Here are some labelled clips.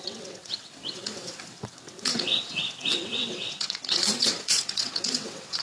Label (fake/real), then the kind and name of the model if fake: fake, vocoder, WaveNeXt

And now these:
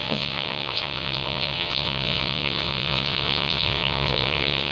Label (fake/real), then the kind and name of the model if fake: fake, vocoder, WaveNeXt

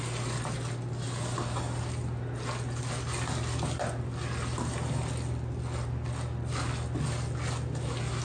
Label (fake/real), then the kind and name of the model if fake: real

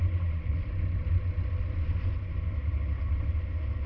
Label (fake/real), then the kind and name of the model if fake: real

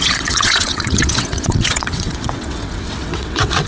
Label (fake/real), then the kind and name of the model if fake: fake, vocoder, WaveNeXt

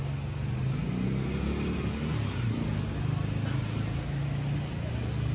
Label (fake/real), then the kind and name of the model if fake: real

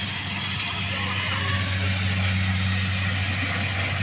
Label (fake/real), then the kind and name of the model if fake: real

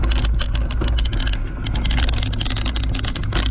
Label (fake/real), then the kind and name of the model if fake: real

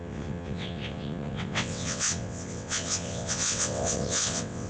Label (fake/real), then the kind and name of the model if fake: fake, vocoder, WaveNeXt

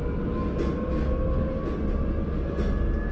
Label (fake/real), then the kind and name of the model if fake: real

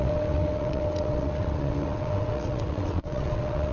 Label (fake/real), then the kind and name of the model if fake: fake, vocoder, WaveNeXt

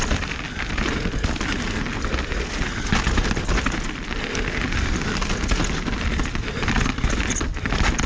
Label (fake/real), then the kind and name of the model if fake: real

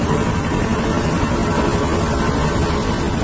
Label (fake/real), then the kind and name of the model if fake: real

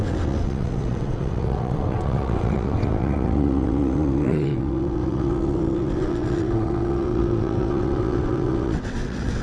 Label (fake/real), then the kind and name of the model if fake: fake, vocoder, WaveNeXt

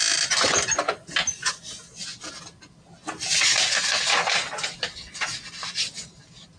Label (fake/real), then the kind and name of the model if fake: real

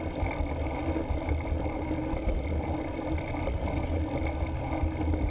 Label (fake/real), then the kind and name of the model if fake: real